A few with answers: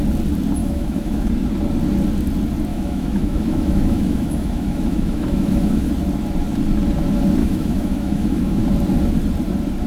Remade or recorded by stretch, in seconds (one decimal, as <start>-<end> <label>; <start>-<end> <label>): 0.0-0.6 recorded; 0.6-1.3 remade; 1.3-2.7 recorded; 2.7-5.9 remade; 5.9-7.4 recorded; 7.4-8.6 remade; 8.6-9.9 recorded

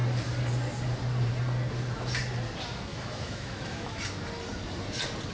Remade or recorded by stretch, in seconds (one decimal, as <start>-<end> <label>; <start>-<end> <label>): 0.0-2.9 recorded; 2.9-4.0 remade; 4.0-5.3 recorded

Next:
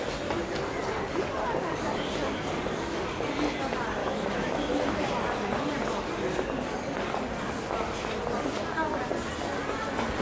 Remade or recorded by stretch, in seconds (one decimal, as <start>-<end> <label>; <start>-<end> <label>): 0.0-4.0 recorded; 4.0-5.1 remade; 5.1-10.2 recorded